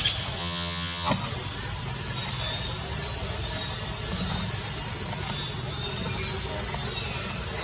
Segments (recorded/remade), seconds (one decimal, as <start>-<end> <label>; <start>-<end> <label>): 0.0-0.4 recorded; 0.4-1.1 remade; 1.1-7.6 recorded